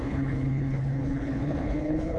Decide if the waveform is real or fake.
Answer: fake